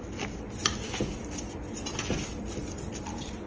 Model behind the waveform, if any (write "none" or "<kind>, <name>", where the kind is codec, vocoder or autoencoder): none